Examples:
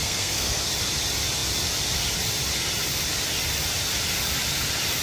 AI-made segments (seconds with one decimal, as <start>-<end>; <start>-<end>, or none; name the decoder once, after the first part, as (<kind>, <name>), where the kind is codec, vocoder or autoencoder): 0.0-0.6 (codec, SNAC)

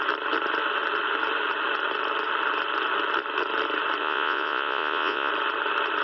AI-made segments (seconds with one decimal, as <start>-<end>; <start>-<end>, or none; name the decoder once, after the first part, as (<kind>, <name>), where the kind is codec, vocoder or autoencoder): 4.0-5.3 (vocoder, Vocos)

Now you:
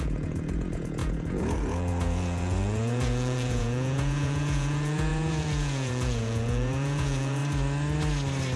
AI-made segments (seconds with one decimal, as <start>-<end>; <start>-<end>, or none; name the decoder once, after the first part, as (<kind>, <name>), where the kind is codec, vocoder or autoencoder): 0.0-7.4 (vocoder, Vocos)

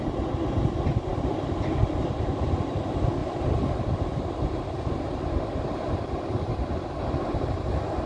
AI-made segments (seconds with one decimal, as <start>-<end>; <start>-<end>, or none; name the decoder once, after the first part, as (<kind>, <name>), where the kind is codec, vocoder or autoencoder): 1.1-1.8 (vocoder, BigVGAN v2); 2.3-2.8; 3.2-3.7

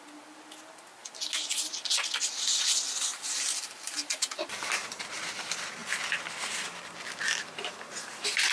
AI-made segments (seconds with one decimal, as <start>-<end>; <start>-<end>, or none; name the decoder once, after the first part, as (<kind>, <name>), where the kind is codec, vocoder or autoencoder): 3.1-5.1 (vocoder, BigVGAN v2)

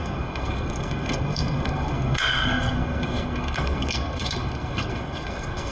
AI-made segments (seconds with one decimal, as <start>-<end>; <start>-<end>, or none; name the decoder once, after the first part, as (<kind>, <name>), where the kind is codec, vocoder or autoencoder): 0.0-5.7 (codec, SNAC)

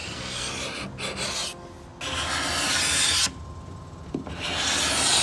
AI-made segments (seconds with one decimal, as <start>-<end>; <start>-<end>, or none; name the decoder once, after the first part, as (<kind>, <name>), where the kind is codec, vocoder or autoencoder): 0.0-0.5 (codec, SNAC)